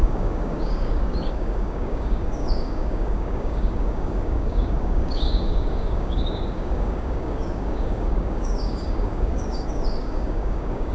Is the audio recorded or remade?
remade